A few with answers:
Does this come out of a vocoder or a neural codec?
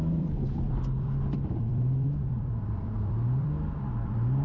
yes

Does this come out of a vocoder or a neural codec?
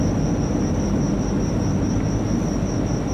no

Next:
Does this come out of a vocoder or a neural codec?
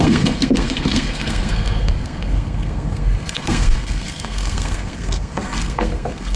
yes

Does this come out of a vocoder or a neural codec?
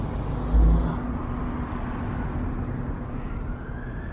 no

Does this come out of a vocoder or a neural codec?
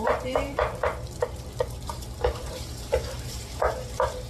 yes